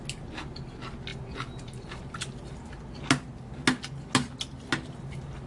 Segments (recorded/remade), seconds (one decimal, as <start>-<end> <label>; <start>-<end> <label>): 0.0-5.5 recorded